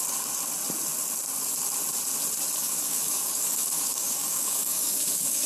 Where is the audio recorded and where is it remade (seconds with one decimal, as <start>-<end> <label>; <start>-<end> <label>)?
0.0-2.6 recorded; 2.6-5.5 remade